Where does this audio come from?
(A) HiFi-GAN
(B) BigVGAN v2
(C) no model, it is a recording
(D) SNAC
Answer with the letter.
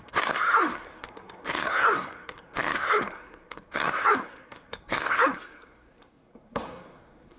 D